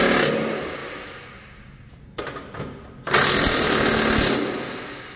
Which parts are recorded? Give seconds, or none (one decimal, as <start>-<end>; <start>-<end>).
0.0-5.2